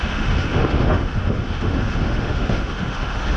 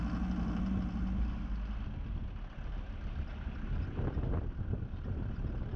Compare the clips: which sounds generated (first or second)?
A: first